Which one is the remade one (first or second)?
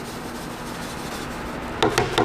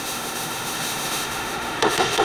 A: second